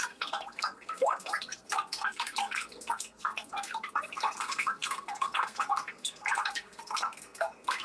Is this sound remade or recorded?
remade